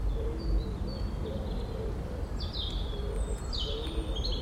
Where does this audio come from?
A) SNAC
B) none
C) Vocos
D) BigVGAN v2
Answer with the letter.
B